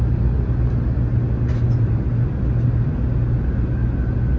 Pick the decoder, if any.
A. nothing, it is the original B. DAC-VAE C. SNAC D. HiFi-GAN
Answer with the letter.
A